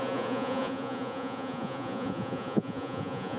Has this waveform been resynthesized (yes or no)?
yes